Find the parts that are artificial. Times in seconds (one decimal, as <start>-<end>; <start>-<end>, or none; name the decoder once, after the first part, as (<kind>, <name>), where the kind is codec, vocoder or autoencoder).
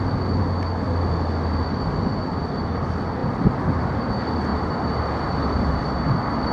3.2-3.8 (vocoder, BigVGAN v2); 4.5-5.8